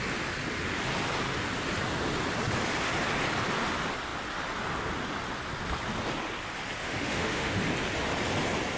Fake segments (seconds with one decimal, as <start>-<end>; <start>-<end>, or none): 6.8-7.6